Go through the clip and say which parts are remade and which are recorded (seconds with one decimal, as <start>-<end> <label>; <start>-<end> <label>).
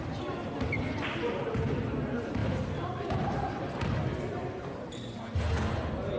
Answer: 0.0-6.2 recorded